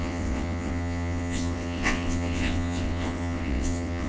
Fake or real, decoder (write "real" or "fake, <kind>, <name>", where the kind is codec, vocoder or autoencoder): fake, vocoder, WaveNeXt